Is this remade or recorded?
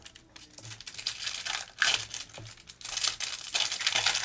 recorded